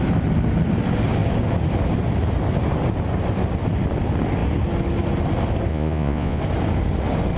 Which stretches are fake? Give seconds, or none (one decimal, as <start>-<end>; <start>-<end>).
5.7-6.4